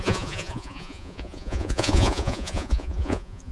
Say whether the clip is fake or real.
fake